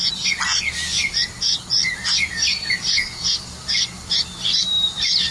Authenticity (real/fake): real